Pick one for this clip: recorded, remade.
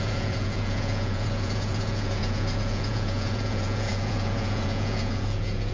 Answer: remade